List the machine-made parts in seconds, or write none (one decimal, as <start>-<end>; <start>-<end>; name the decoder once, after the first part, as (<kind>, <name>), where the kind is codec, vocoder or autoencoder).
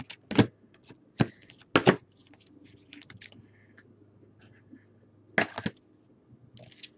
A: none